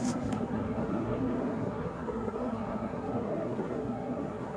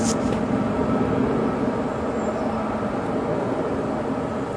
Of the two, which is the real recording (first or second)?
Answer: second